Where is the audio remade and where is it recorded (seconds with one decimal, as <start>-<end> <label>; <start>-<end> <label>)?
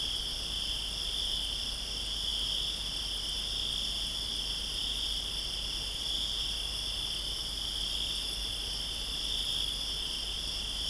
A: 0.0-10.9 recorded